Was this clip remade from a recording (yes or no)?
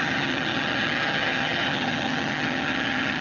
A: yes